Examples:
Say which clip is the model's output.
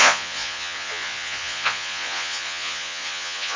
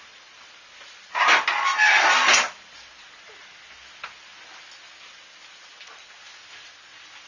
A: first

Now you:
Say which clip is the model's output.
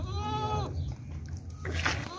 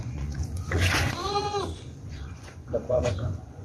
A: second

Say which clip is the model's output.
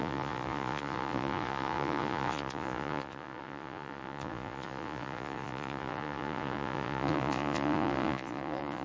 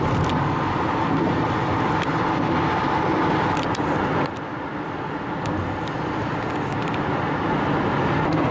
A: first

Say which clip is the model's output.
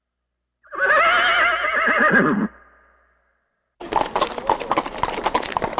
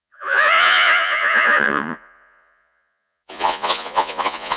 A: second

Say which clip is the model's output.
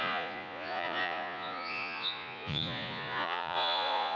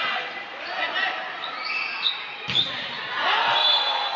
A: first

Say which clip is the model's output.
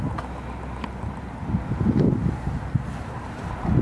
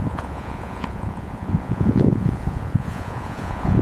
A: second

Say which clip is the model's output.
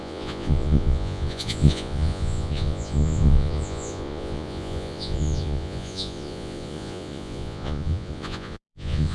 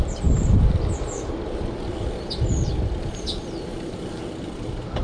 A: first